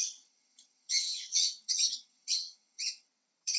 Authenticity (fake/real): fake